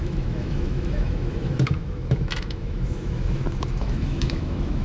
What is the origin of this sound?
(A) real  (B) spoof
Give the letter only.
B